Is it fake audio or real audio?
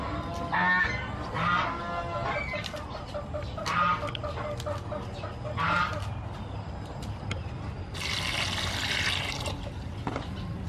real